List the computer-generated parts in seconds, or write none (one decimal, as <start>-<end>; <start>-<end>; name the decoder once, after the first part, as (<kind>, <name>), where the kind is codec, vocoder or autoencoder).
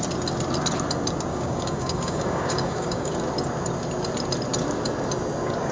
1.3-3.1 (codec, DAC)